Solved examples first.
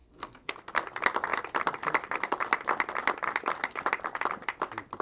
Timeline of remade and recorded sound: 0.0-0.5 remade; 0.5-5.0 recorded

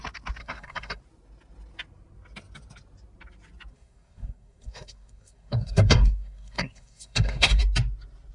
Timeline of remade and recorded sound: 0.0-0.4 recorded; 0.4-1.0 remade; 1.0-3.7 recorded; 3.7-7.6 remade; 7.6-8.3 recorded

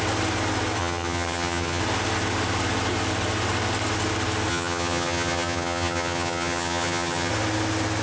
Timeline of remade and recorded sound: 0.0-0.8 recorded; 0.8-1.8 remade; 1.8-4.5 recorded; 4.5-7.3 remade; 7.3-8.0 recorded

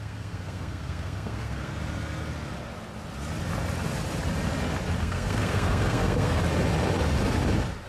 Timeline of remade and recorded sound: 0.0-1.7 remade; 1.7-5.0 recorded; 5.0-6.4 remade; 6.4-7.9 recorded

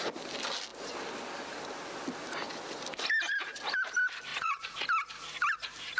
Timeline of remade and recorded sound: 0.0-4.3 recorded; 4.3-4.8 remade; 4.8-6.0 recorded